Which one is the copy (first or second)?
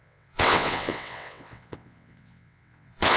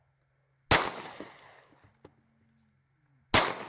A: first